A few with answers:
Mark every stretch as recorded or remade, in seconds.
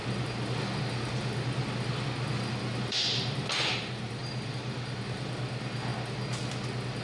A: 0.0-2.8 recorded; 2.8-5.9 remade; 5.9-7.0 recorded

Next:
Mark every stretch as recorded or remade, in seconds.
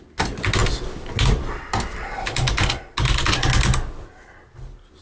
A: 0.0-5.0 recorded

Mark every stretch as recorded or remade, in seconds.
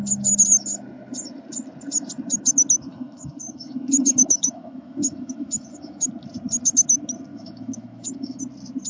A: 0.0-2.9 recorded; 2.9-6.1 remade; 6.1-7.3 recorded; 7.3-8.4 remade; 8.4-8.9 recorded